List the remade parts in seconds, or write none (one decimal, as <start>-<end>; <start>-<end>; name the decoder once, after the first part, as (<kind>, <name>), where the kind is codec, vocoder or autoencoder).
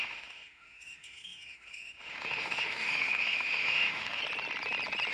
0.0-4.2 (autoencoder, DAC-VAE)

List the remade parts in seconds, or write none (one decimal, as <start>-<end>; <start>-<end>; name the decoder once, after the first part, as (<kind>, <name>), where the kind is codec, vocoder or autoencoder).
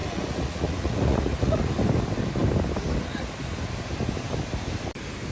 0.0-1.7 (vocoder, Vocos)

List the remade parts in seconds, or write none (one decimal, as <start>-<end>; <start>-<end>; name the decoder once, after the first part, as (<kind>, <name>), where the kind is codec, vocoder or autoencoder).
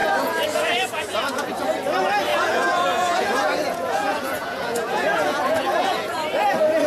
0.0-1.5 (vocoder, Vocos); 2.3-6.4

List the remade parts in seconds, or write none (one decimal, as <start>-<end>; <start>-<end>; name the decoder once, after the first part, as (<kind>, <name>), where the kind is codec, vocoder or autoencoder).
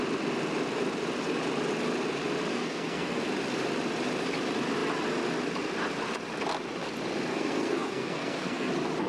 2.5-3.2 (codec, SNAC); 7.3-8.7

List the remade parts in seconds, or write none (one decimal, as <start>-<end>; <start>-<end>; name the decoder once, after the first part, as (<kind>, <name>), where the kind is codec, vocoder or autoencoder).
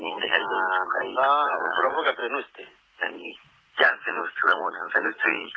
0.0-0.4 (vocoder, Vocos); 1.5-2.2; 2.8-5.6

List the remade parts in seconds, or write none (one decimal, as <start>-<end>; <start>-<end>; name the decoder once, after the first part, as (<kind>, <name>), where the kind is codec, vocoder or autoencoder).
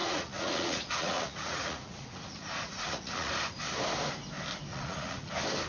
0.0-3.3 (vocoder, Vocos); 4.7-5.3